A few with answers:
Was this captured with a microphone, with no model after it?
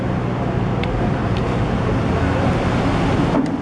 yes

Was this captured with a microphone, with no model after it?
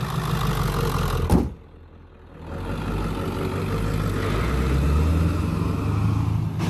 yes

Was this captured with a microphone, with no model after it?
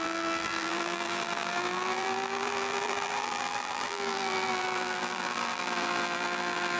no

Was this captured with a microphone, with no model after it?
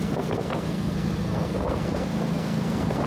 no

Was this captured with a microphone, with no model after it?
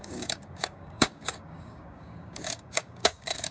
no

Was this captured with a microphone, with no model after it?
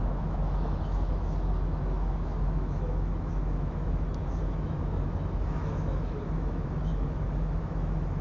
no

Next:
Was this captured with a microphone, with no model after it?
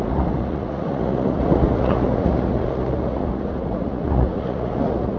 no